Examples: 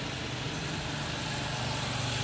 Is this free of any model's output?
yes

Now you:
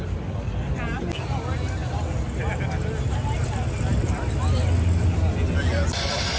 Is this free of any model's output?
yes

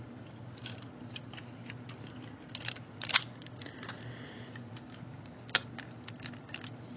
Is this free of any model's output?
yes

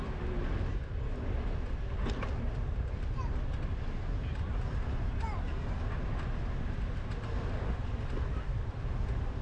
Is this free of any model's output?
yes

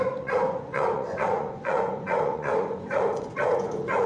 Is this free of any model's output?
no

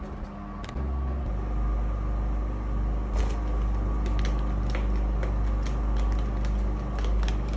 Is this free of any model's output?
yes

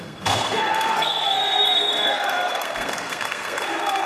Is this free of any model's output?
no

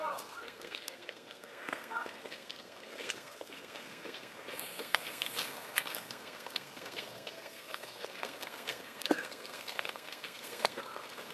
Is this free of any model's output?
no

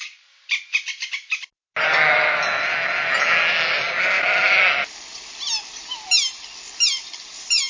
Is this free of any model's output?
yes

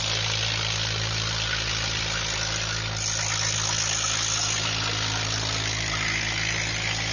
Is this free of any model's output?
yes